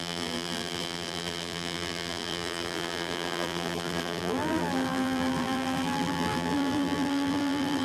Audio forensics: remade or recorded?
remade